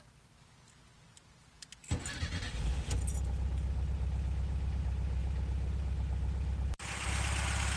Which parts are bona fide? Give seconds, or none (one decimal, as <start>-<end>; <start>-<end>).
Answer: 0.0-7.8